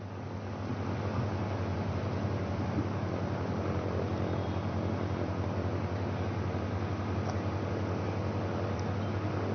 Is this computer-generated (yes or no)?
no